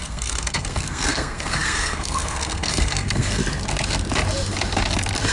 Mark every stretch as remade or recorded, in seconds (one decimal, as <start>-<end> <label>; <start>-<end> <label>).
0.0-3.4 remade; 3.4-5.3 recorded